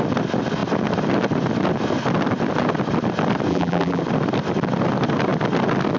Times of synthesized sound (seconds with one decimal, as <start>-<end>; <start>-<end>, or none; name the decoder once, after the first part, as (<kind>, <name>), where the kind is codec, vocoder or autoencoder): 3.5-4.0 (vocoder, BigVGAN v2)